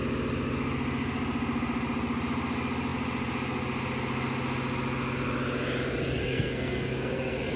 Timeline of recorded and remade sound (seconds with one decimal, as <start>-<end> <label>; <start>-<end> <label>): 0.0-6.2 recorded; 6.2-7.6 remade